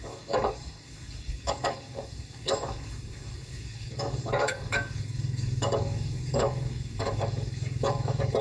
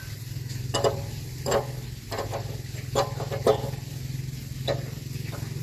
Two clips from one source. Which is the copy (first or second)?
first